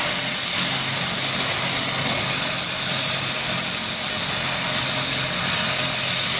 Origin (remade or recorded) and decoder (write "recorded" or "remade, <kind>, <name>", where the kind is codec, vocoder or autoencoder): recorded